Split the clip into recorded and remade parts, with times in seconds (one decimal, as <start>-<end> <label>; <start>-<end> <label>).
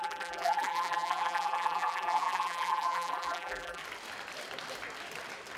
0.0-3.8 remade; 3.8-5.6 recorded